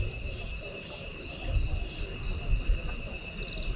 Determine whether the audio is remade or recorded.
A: recorded